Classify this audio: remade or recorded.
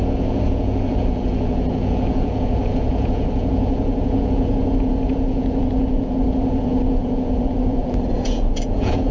remade